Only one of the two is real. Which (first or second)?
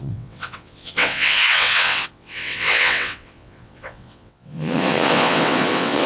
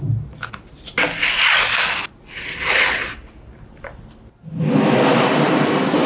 second